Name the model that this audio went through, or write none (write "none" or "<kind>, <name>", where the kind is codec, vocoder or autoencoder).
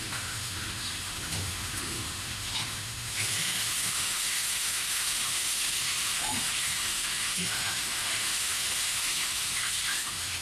autoencoder, DAC-VAE